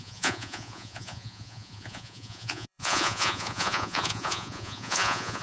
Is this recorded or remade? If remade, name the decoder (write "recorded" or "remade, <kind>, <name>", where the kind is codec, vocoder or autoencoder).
remade, vocoder, Vocos